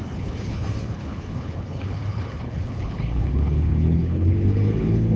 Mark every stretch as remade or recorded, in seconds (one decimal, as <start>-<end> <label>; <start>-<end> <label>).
0.0-5.2 remade